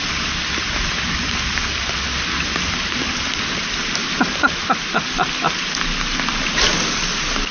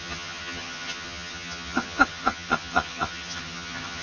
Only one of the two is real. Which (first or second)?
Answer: first